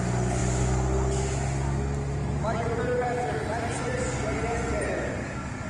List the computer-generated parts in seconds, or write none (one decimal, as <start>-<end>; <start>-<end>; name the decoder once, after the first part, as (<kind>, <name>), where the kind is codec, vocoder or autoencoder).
none